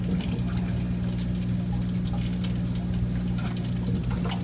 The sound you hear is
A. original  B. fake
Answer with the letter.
A